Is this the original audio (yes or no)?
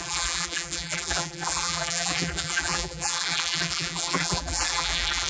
no